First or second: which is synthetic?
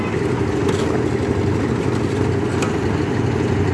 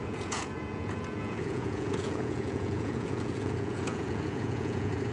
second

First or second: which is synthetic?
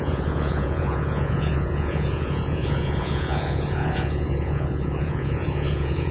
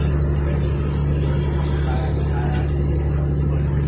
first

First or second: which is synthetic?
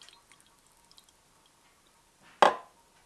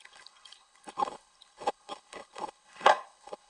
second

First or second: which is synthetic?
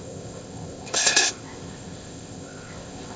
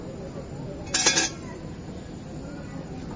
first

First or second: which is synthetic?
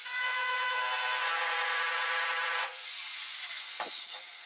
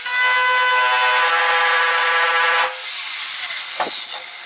first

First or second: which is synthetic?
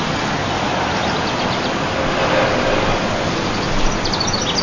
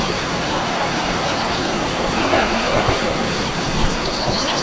second